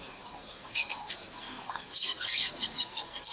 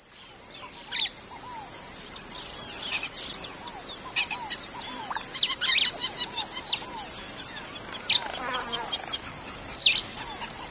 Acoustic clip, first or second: second